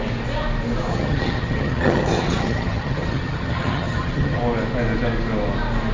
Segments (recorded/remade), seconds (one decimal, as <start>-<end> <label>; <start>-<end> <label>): 0.0-0.9 recorded; 0.9-4.4 remade; 4.4-5.9 recorded